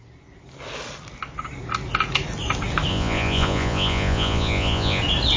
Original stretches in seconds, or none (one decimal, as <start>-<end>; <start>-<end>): 0.0-2.9; 5.0-5.4